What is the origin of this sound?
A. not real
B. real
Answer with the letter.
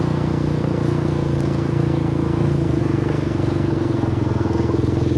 A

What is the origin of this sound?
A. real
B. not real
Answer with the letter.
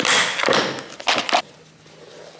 A